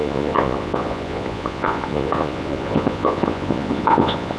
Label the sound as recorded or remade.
remade